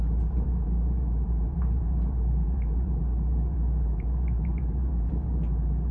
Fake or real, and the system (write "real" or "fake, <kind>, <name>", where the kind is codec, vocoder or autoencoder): fake, vocoder, BigVGAN v2